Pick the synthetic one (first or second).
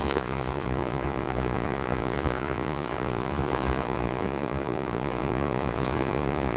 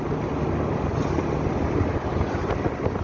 first